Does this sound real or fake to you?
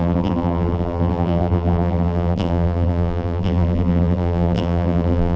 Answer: fake